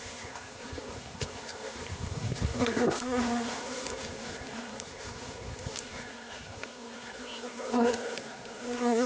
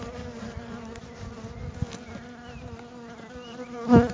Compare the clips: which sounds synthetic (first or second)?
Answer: first